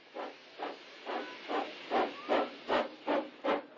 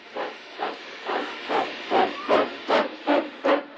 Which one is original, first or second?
first